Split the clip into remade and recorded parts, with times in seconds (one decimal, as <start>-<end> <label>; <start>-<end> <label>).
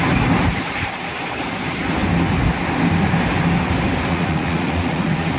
0.0-4.1 recorded; 4.1-5.4 remade